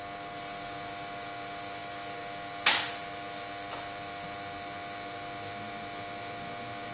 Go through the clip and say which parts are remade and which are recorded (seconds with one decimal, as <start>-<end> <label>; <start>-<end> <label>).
0.0-6.9 recorded